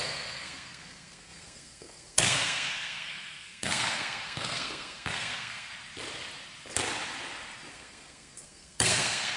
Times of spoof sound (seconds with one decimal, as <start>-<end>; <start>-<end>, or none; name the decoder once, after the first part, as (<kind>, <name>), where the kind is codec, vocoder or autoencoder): 0.0-5.7 (codec, SNAC); 7.7-9.4